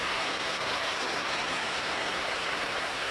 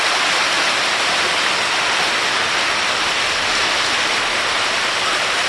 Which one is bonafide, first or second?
second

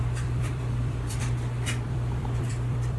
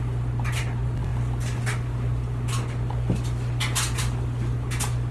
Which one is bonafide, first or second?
second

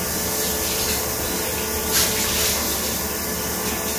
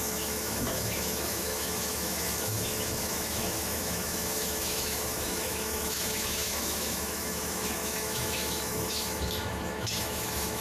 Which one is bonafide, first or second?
first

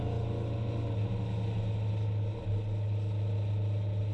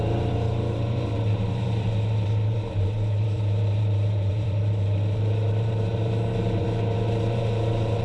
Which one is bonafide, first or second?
first